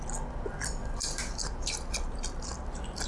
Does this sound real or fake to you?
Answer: real